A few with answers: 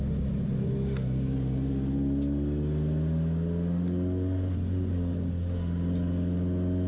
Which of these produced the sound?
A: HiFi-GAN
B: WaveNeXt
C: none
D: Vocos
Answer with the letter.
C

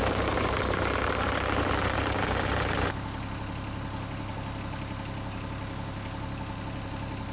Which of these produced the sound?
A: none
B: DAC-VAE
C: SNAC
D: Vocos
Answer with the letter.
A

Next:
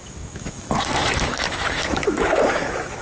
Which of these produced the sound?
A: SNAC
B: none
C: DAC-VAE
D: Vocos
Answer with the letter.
C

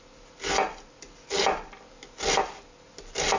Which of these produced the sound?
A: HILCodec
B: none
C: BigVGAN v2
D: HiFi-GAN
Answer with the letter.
B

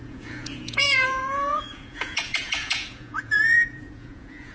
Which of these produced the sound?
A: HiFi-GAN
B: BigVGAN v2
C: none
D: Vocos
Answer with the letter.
D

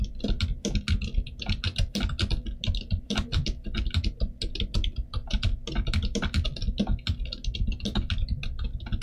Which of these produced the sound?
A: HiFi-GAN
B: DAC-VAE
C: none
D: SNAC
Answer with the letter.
C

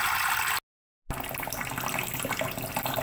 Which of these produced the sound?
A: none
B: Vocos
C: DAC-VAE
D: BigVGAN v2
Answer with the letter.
A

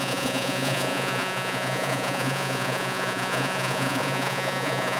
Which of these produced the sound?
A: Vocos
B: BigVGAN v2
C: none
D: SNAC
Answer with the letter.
A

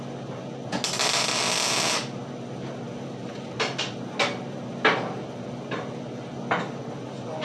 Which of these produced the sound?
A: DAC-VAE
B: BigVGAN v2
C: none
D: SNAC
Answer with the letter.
C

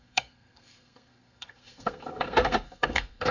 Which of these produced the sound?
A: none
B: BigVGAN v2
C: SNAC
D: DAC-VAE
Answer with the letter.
C